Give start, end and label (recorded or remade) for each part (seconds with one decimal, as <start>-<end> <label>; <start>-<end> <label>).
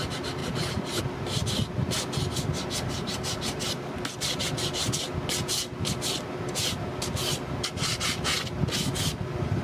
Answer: 0.0-9.6 recorded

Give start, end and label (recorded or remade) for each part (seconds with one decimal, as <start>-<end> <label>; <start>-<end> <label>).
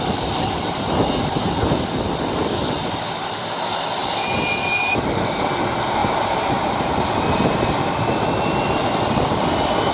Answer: 0.0-6.0 recorded; 6.0-7.9 remade; 7.9-9.9 recorded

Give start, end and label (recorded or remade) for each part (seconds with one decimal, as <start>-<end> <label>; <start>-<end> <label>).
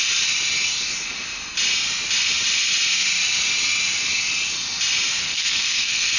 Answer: 0.0-5.2 recorded; 5.2-6.2 remade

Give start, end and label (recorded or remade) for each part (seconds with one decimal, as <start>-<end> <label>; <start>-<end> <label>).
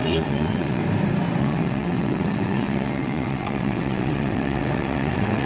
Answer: 0.0-0.8 remade; 0.8-1.4 recorded; 1.4-5.5 remade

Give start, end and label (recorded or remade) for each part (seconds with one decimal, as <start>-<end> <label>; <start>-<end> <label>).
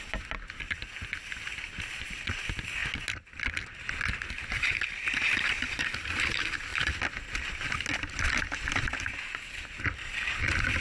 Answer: 0.0-10.8 recorded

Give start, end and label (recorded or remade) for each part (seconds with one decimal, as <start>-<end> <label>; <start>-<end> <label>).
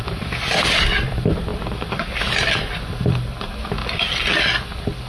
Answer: 0.0-3.8 remade; 3.8-5.1 recorded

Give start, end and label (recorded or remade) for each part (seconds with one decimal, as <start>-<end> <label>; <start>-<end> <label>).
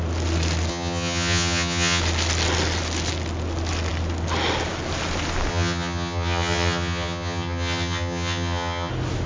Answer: 0.0-0.7 recorded; 0.7-2.0 remade; 2.0-5.5 recorded; 5.5-8.9 remade; 8.9-9.3 recorded